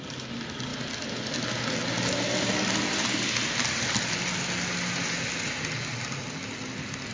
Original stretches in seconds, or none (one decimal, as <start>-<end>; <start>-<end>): 0.0-7.1